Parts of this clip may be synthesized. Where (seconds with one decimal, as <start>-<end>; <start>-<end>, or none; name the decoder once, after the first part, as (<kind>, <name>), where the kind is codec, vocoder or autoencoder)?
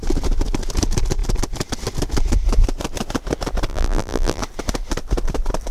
3.7-4.4 (vocoder, BigVGAN v2)